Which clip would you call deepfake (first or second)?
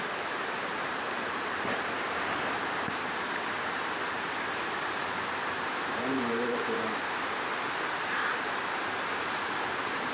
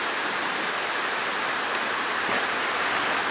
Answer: first